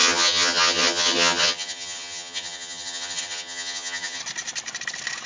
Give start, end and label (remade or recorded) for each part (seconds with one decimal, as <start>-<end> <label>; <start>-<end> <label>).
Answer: 0.0-4.2 remade; 4.2-5.3 recorded

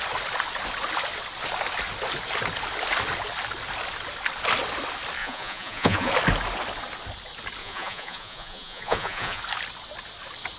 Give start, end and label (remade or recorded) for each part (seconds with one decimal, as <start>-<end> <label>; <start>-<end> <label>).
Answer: 0.0-5.2 recorded; 5.2-6.1 remade; 6.1-7.6 recorded; 7.6-9.4 remade; 9.4-10.6 recorded

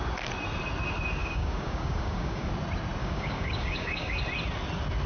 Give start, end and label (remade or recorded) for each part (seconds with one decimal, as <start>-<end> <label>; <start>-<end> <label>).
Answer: 0.0-1.2 recorded; 1.2-2.5 remade; 2.5-3.0 recorded; 3.0-4.2 remade; 4.2-5.1 recorded

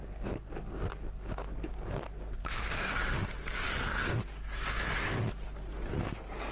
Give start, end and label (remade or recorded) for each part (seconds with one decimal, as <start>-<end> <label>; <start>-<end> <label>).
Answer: 0.0-0.5 remade; 0.5-2.4 recorded; 2.4-3.1 remade; 3.1-6.5 recorded